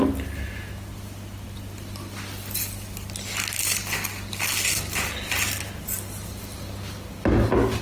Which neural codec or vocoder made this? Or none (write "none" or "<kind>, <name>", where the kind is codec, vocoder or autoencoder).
none